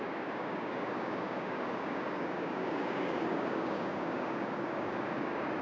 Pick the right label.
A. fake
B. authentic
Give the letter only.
A